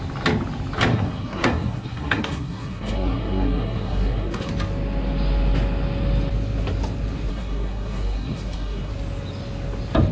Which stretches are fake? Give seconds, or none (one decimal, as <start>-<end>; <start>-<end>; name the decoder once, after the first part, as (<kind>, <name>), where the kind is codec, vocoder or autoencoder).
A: 0.9-4.5 (codec, SNAC); 7.3-8.9